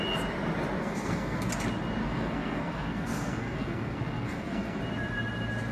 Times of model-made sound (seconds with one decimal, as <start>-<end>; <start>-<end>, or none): 0.8-1.5; 2.0-4.8